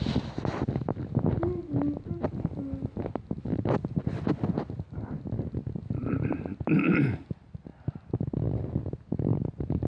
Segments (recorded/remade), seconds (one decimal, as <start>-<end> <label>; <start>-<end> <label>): 0.0-9.9 recorded